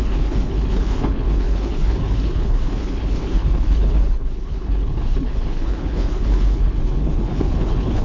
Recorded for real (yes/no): no